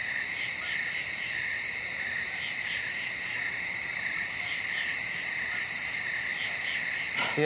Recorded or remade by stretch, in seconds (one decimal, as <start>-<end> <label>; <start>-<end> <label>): 0.0-7.4 recorded